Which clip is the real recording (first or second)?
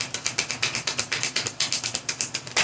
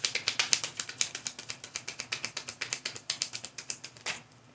second